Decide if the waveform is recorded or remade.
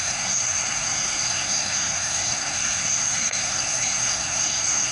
remade